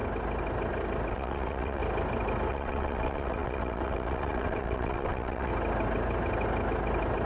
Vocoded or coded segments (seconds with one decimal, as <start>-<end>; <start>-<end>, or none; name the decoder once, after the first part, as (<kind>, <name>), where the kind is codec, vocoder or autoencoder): 1.1-1.8 (vocoder, WaveNeXt); 2.5-5.5